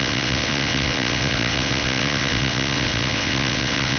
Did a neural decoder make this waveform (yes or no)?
yes